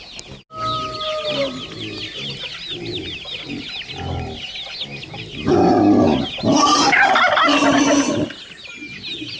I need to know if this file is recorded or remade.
recorded